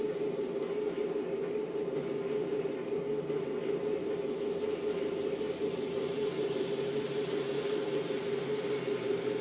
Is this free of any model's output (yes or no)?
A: yes